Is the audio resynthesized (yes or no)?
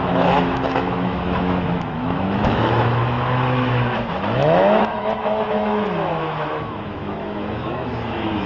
yes